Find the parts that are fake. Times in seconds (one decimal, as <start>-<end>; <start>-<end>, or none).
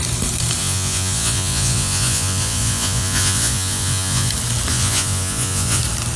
0.6-4.3; 4.7-5.8